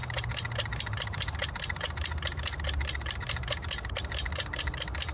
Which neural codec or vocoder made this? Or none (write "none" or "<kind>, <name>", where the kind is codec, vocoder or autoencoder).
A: none